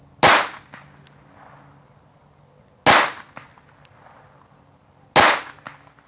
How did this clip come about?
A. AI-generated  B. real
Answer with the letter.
B